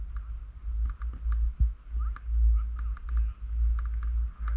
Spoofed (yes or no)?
no